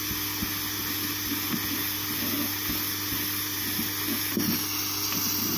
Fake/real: real